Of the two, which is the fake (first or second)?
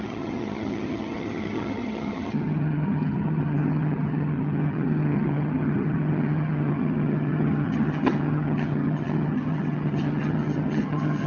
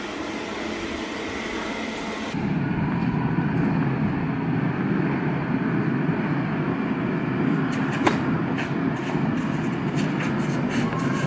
first